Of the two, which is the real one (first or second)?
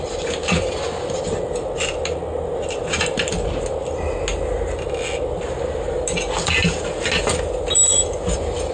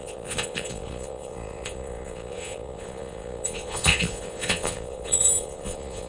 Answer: first